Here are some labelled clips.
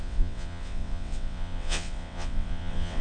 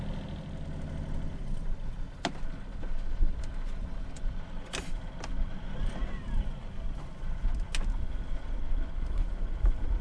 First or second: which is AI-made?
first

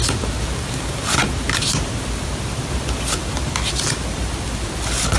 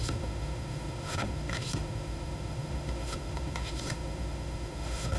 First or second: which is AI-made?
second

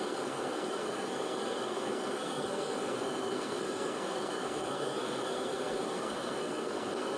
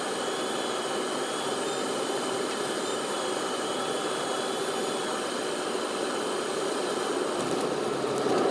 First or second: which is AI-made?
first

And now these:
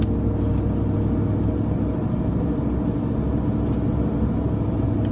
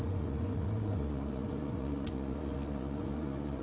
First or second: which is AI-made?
second